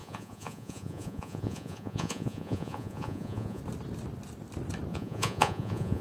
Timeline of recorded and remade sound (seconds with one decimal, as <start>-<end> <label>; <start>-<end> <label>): 0.0-3.6 remade; 3.6-4.9 recorded; 4.9-6.0 remade